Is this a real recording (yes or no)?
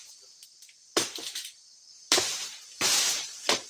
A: no